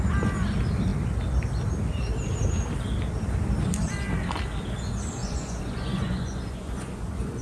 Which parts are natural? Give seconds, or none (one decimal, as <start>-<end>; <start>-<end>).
0.0-5.2